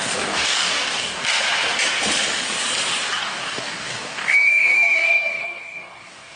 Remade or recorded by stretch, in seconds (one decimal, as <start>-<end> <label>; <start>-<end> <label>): 0.0-1.2 remade; 1.2-3.2 recorded; 3.2-6.4 remade